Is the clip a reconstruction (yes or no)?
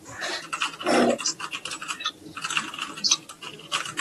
no